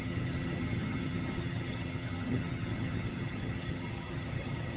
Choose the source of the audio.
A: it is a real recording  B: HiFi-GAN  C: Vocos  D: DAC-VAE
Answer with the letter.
B